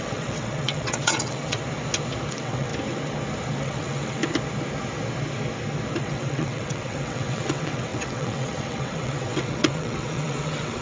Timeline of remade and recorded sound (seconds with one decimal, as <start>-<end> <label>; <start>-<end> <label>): 0.0-1.6 remade; 1.6-2.3 recorded; 2.3-2.7 remade; 2.7-3.6 recorded; 3.6-4.2 remade; 4.2-6.0 recorded; 6.0-10.8 remade